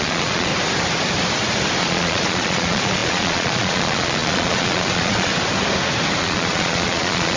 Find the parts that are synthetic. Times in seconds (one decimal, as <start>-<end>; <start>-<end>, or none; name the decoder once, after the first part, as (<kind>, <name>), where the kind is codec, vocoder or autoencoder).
0.0-0.5 (vocoder, Vocos); 1.8-5.3; 6.2-7.4

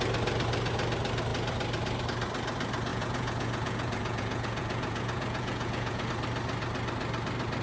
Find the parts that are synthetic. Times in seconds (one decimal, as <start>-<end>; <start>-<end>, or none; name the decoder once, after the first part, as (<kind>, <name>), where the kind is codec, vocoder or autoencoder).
2.9-6.1 (vocoder, Vocos)